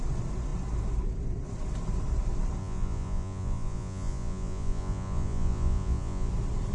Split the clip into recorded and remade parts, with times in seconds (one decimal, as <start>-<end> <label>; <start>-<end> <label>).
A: 0.0-2.6 recorded; 2.6-6.3 remade; 6.3-6.7 recorded